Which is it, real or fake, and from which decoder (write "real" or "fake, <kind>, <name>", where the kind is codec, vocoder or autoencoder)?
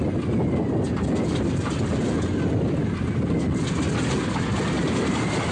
real